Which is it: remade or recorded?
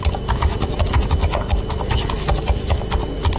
recorded